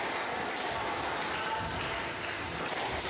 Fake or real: real